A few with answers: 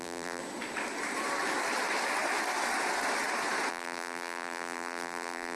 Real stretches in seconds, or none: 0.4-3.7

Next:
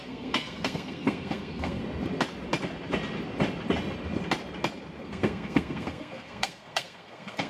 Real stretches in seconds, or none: 1.8-5.0

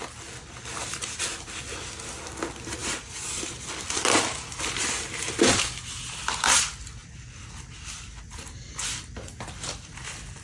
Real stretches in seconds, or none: 0.0-7.0; 8.0-10.4